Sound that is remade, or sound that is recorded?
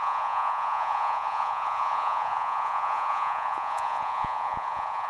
remade